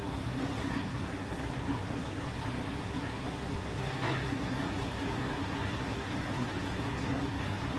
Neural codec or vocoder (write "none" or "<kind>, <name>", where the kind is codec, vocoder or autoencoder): codec, SNAC